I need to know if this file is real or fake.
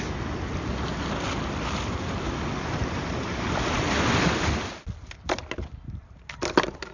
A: real